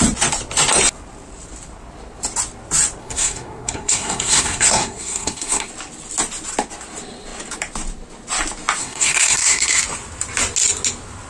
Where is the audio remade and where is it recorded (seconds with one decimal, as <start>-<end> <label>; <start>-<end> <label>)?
0.0-3.0 recorded; 3.0-5.7 remade; 5.7-8.8 recorded; 8.8-9.8 remade; 9.8-11.3 recorded